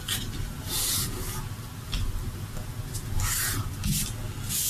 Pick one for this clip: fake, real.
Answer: real